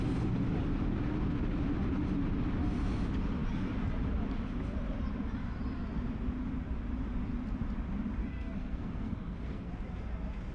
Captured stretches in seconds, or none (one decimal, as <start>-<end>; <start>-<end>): 0.0-8.2; 9.7-10.5